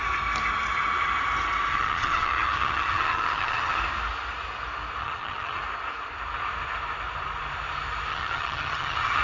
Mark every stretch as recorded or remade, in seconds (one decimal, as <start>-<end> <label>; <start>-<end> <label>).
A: 0.0-1.7 recorded; 1.7-3.8 remade; 3.8-5.0 recorded; 5.0-5.6 remade; 5.6-8.1 recorded; 8.1-9.2 remade